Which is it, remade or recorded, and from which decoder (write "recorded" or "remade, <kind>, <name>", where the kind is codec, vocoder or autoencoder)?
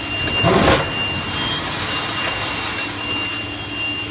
recorded